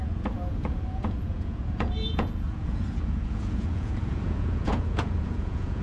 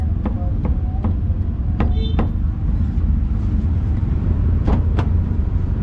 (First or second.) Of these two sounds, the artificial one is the first